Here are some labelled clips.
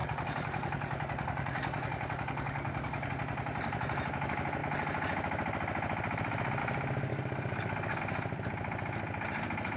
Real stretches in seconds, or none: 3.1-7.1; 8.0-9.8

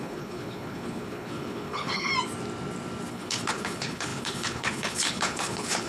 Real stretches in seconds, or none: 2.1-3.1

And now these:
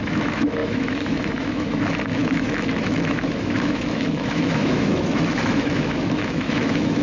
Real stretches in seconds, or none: none

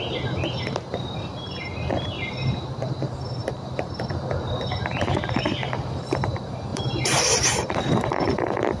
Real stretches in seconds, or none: none

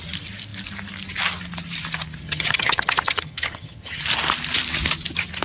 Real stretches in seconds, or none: 0.0-2.2; 4.0-5.4